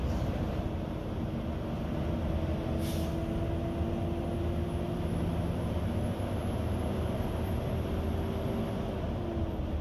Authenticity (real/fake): real